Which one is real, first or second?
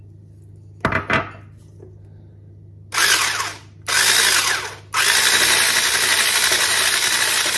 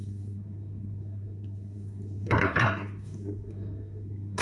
first